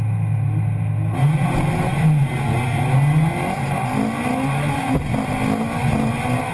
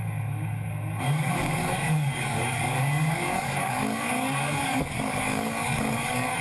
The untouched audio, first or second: first